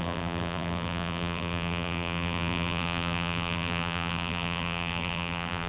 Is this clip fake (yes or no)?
yes